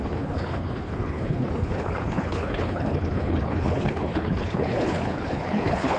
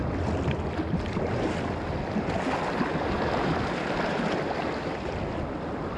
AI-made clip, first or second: first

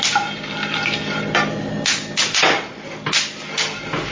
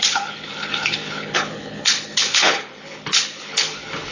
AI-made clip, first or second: second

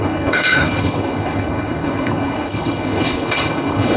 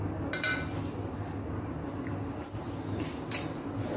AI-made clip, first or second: first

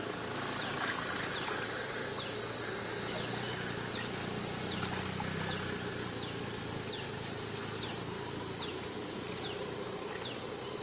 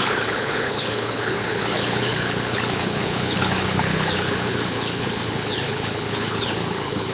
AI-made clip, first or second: second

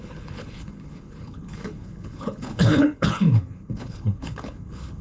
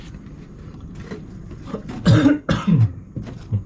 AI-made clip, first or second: first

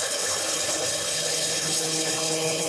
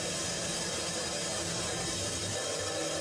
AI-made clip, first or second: first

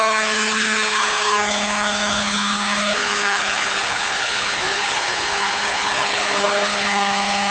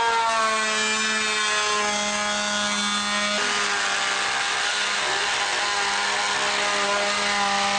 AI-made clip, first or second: first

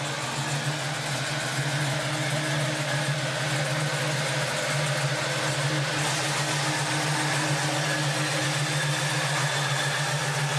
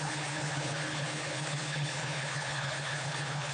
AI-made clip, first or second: second